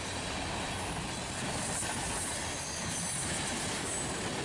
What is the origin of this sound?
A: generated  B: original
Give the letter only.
B